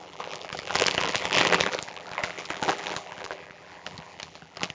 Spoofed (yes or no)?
yes